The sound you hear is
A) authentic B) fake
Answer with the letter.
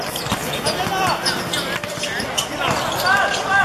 A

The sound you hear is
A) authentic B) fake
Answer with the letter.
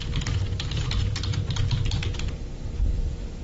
B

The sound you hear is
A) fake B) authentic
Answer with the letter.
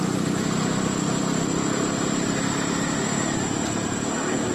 B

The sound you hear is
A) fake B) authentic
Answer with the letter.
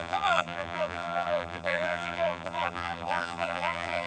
A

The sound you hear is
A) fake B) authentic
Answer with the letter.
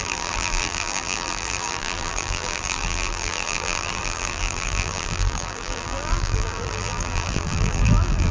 A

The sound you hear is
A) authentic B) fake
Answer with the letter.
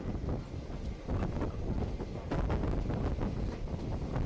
A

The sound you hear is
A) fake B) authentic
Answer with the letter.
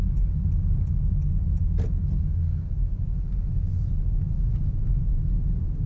B